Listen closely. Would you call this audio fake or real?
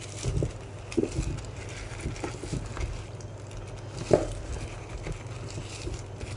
real